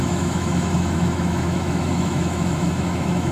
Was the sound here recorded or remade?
remade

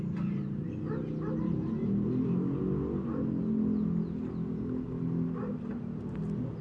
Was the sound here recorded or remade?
recorded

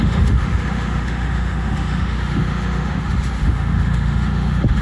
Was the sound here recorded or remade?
remade